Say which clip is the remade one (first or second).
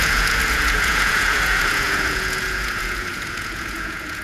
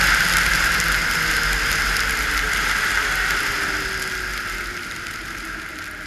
first